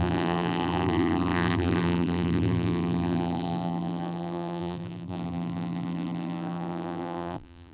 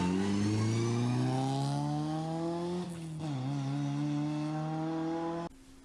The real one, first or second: second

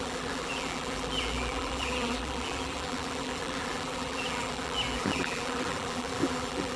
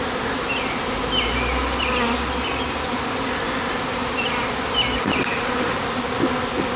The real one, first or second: second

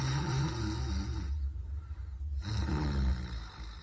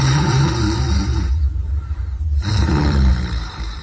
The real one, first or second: first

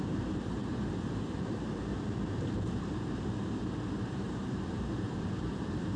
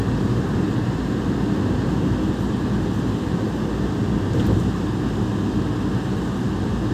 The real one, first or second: second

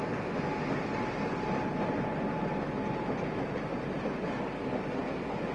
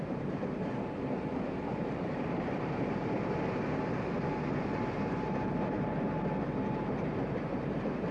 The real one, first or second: first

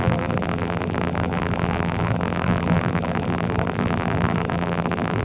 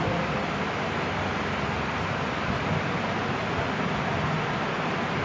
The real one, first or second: second